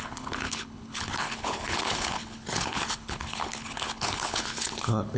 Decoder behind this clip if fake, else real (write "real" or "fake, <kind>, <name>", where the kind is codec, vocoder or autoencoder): fake, codec, HILCodec